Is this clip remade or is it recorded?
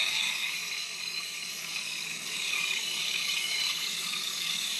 remade